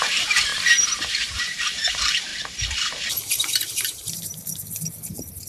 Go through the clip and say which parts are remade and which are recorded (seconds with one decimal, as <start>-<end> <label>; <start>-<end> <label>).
0.0-2.3 remade; 2.3-3.6 recorded; 3.6-5.5 remade